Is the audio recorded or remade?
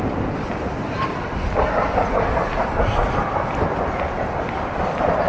recorded